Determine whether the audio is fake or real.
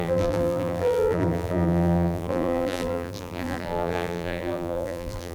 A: fake